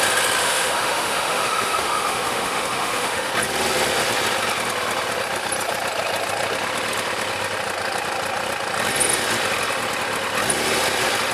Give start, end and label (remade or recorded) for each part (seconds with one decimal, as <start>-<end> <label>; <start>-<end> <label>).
0.0-0.4 recorded; 0.4-3.3 remade; 3.3-11.3 recorded